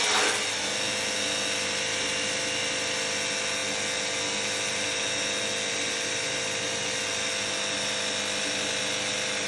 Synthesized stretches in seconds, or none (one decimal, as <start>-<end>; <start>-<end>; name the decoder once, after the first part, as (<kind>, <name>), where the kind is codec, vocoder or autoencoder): none